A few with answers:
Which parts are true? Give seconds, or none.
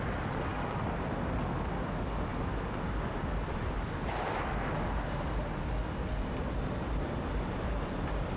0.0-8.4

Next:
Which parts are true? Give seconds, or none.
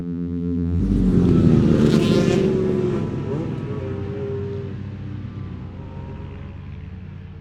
0.8-7.4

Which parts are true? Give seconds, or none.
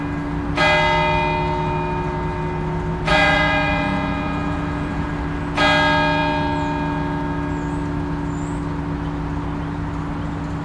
0.0-3.1; 5.1-10.6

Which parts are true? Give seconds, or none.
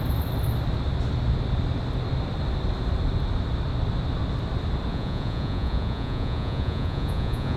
0.0-4.9